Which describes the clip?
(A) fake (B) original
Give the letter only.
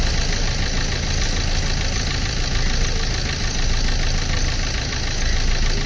B